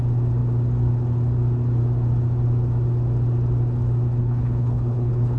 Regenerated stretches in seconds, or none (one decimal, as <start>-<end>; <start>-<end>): 4.2-5.4

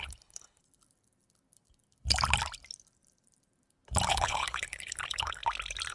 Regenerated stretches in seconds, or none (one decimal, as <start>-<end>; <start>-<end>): 0.0-0.6; 4.1-5.4

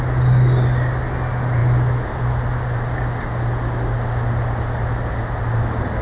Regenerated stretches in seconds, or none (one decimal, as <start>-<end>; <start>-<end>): none

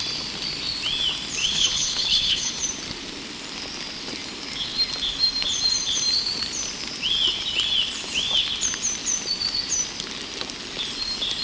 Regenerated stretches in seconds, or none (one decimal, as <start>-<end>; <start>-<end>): 1.4-2.5